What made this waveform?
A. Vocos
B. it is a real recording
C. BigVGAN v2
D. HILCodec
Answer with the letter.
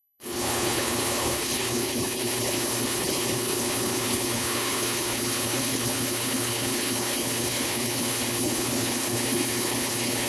D